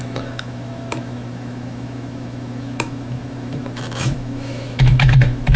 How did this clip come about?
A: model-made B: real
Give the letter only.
A